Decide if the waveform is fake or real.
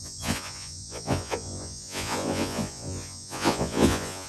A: fake